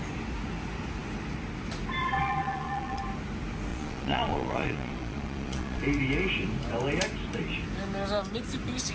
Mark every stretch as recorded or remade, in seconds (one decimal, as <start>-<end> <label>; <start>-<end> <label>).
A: 0.0-2.0 recorded; 2.0-3.0 remade; 3.0-3.7 recorded; 3.7-5.8 remade; 5.8-8.9 recorded